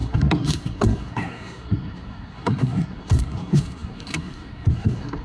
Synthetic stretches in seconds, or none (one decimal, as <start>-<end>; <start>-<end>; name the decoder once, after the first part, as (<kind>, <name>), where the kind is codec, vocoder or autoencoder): 0.0-5.2 (codec, SNAC)